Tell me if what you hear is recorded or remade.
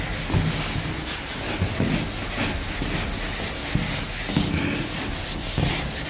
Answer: recorded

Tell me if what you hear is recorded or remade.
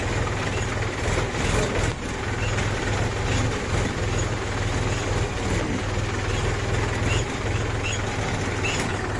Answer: recorded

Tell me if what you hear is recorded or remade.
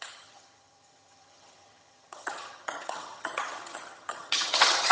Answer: remade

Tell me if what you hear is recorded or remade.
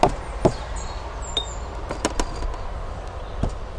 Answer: recorded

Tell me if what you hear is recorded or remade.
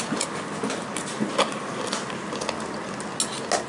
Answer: recorded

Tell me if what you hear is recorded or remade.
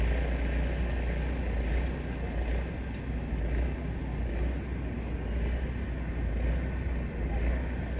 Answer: recorded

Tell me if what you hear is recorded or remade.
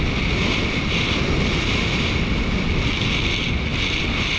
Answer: recorded